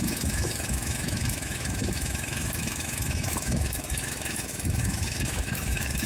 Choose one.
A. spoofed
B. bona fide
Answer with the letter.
A